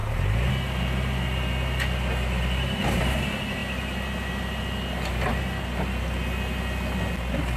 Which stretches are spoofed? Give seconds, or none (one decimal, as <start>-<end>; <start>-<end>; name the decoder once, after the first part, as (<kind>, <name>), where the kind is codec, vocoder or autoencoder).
none